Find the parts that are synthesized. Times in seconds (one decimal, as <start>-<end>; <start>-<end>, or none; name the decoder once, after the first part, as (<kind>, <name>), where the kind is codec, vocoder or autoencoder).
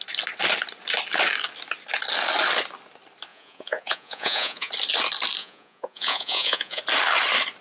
3.3-4.7 (vocoder, Vocos); 5.4-6.8